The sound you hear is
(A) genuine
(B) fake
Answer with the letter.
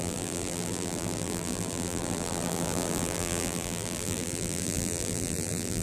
B